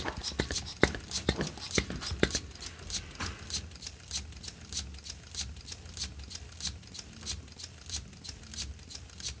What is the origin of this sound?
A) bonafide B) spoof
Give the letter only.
A